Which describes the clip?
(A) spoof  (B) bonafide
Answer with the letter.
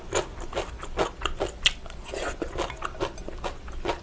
B